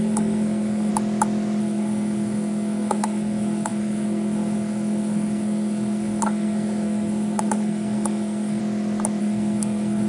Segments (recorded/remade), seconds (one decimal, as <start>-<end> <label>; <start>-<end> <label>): 0.0-0.9 remade; 0.9-1.6 recorded; 1.6-8.6 remade; 8.6-9.2 recorded; 9.2-10.1 remade